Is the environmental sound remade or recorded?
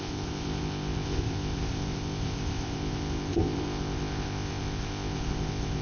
remade